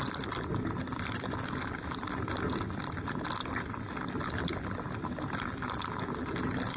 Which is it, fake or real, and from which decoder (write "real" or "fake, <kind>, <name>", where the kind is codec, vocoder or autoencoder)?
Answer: real